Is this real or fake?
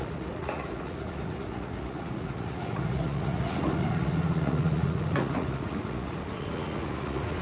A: fake